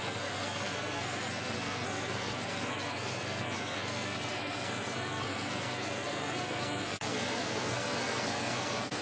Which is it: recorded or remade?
remade